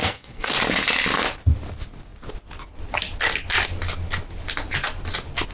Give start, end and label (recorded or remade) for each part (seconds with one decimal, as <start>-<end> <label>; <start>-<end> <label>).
0.0-0.5 remade; 0.5-5.5 recorded